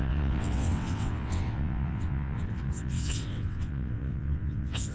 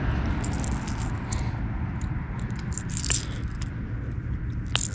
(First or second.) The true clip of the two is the second